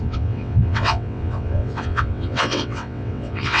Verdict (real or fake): fake